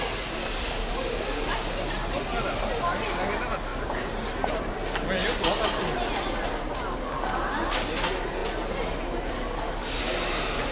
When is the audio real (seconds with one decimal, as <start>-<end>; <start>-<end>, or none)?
0.0-5.2; 7.0-10.7